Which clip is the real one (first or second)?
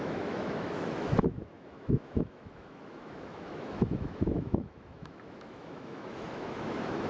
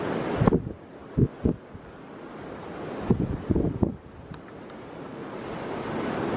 second